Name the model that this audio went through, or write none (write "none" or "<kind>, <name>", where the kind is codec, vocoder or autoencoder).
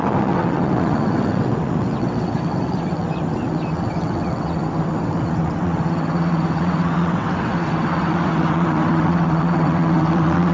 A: vocoder, WaveNeXt